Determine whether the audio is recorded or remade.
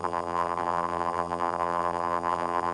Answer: remade